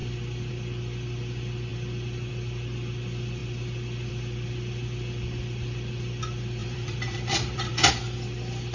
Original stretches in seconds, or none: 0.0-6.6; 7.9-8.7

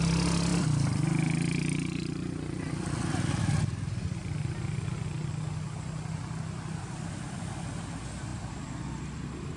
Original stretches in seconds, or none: 0.0-0.5; 3.0-8.3; 8.9-9.6

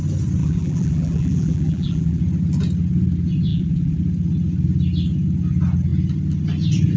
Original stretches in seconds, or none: 0.0-0.4; 2.2-3.5; 4.0-7.0

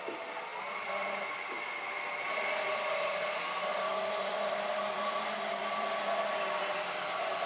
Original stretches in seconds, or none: 0.0-0.5; 2.1-3.7; 6.4-7.5